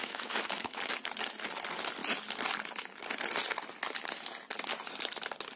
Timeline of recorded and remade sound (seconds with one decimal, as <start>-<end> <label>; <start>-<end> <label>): 0.0-0.9 remade; 0.9-5.6 recorded